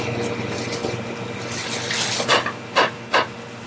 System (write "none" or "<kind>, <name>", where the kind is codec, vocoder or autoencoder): none